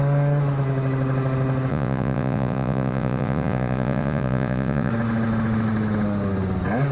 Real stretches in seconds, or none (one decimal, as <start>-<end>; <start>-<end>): 0.0-1.7; 4.9-6.9